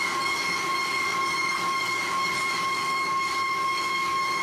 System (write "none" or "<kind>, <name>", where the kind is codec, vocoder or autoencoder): codec, DAC